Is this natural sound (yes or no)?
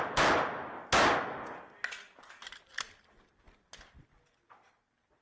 yes